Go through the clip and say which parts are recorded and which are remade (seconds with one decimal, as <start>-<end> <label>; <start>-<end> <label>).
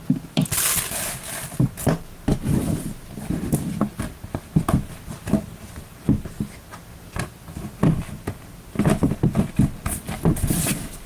0.0-11.1 recorded